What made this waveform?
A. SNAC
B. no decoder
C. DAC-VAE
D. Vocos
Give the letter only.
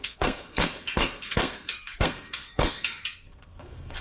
A